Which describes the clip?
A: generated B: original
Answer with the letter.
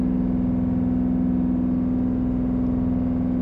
B